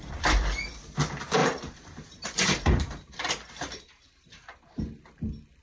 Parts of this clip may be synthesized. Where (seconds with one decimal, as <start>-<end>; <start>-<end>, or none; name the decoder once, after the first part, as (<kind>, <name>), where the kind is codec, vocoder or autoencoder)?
1.4-4.8 (vocoder, BigVGAN v2)